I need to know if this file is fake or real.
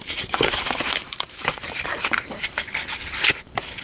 fake